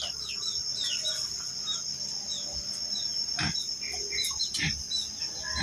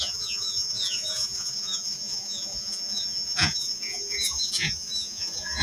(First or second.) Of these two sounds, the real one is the first